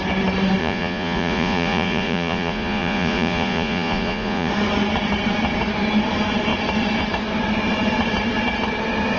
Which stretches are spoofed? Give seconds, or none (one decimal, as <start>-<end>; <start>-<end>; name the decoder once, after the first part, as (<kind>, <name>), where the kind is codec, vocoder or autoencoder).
0.6-4.5 (vocoder, Vocos)